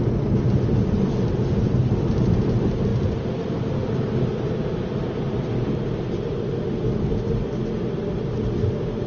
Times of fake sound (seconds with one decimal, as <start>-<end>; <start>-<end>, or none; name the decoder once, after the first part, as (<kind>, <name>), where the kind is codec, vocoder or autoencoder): none